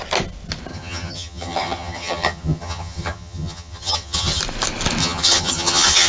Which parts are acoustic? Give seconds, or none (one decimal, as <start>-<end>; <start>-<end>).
0.0-0.7; 4.4-5.0